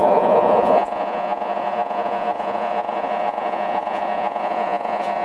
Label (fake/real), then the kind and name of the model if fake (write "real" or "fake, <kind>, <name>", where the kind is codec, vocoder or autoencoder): fake, vocoder, Vocos